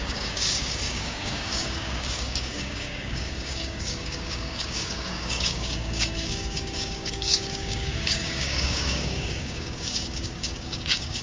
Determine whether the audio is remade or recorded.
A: remade